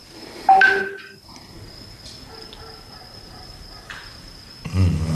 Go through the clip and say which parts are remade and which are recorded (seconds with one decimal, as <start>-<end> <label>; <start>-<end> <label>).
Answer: 0.0-5.1 recorded